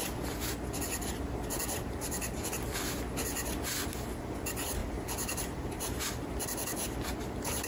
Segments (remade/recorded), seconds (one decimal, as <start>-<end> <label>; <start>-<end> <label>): 0.0-4.8 recorded; 4.8-6.1 remade; 6.1-7.7 recorded